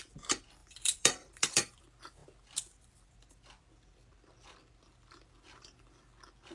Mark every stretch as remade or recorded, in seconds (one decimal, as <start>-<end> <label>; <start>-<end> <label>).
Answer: 0.0-0.6 recorded; 0.6-1.8 remade; 1.8-6.5 recorded